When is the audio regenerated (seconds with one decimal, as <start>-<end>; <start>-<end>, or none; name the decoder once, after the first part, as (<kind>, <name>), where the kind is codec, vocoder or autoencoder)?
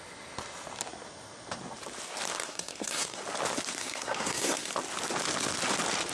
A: 2.4-3.2 (codec, SNAC); 3.8-4.7